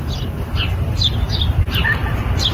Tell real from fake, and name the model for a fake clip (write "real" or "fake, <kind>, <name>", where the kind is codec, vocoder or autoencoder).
real